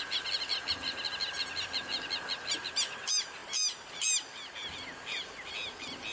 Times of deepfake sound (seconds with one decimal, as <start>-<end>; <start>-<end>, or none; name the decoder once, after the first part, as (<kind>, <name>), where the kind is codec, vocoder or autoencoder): none